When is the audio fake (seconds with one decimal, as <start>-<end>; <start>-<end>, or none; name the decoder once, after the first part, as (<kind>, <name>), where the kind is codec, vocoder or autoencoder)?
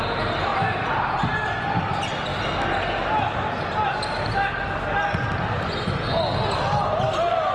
0.5-1.4 (vocoder, BigVGAN v2)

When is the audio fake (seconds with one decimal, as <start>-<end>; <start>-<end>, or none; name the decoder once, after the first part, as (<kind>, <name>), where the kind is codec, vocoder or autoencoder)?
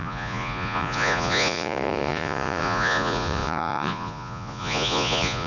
0.0-5.5 (vocoder, Vocos)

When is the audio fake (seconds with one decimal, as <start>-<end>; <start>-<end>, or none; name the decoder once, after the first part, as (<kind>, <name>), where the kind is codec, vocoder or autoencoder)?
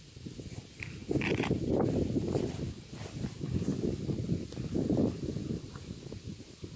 0.0-1.0 (vocoder, BigVGAN v2); 3.0-3.7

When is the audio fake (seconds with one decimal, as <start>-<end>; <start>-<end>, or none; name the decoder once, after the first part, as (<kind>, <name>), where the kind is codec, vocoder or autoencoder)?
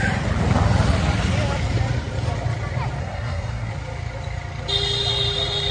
3.0-3.7 (codec, SNAC)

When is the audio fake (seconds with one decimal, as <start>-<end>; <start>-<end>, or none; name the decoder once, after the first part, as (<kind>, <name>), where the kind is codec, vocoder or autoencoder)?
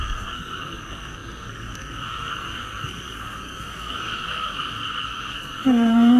0.0-6.2 (codec, SNAC)